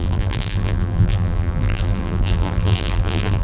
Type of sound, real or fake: fake